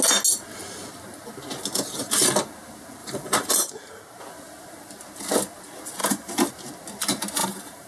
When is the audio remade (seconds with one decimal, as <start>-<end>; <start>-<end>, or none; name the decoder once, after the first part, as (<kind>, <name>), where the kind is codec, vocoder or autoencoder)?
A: 3.0-4.0 (vocoder, BigVGAN v2); 6.0-6.5; 7.4-7.9